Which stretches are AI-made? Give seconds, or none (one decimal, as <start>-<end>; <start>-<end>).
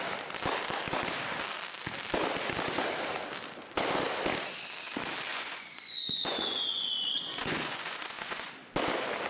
5.3-8.5